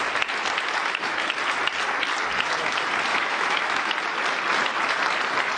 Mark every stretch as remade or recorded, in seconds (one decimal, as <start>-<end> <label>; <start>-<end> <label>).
0.0-0.8 recorded; 0.8-1.3 remade; 1.3-3.1 recorded; 3.1-3.9 remade; 3.9-5.6 recorded